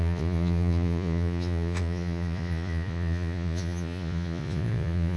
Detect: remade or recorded remade